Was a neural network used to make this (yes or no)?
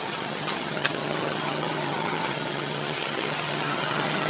yes